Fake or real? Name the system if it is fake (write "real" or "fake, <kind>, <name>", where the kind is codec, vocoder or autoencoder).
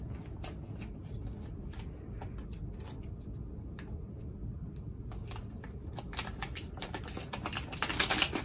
real